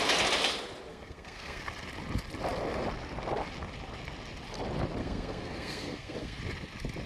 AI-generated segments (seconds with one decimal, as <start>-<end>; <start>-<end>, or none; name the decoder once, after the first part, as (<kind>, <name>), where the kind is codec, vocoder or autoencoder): 0.9-1.6 (codec, SNAC); 5.0-6.4